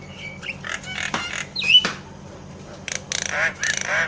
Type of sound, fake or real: real